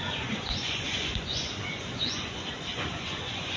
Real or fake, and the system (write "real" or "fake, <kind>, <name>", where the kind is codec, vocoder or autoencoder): fake, vocoder, Vocos